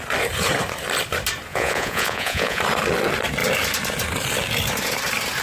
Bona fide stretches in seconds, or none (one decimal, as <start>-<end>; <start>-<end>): 0.0-1.5; 2.6-5.4